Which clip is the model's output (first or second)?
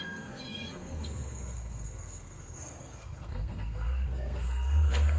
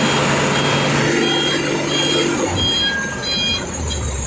first